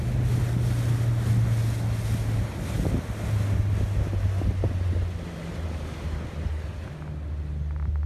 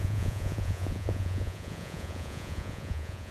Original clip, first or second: first